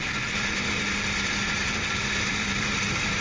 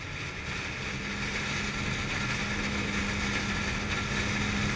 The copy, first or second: first